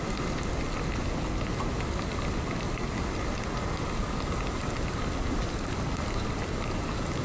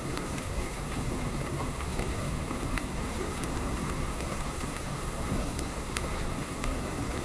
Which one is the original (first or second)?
first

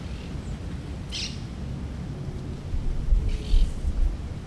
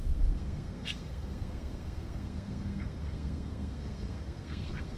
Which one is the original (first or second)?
first